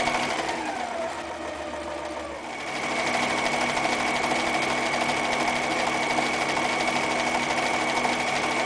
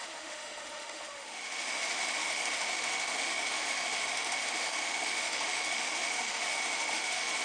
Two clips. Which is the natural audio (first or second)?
first